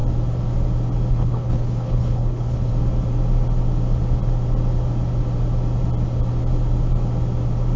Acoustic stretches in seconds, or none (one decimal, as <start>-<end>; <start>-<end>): 0.0-1.1; 2.7-7.8